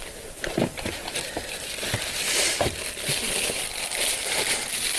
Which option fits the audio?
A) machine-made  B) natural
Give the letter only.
A